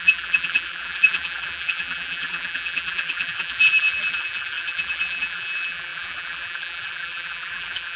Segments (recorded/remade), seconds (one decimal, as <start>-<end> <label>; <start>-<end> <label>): 0.0-8.0 remade